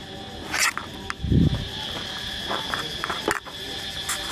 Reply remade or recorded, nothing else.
recorded